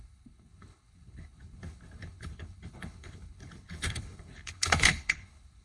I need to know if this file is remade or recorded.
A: remade